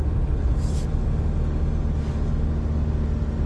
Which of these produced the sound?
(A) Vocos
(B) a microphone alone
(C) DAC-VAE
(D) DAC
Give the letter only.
B